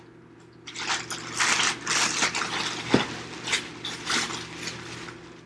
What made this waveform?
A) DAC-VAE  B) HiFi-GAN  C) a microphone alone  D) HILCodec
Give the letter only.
C